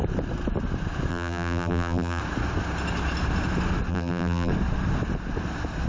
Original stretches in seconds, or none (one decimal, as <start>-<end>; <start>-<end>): 0.0-1.1; 2.2-3.9; 4.5-5.9